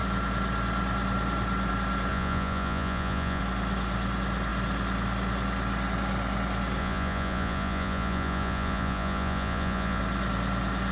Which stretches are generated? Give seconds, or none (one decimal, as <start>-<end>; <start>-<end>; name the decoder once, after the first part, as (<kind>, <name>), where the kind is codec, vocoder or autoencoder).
2.1-3.4 (vocoder, Vocos); 6.8-10.0